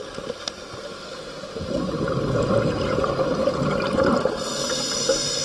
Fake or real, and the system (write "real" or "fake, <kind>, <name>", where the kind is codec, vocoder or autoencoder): real